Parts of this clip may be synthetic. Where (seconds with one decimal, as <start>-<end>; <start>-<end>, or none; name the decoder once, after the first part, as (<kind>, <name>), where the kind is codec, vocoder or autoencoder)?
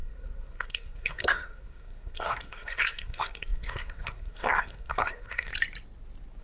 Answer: 0.0-5.5 (codec, SNAC)